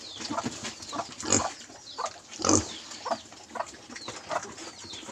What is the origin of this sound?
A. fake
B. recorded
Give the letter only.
B